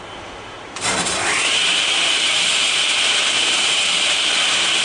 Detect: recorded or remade remade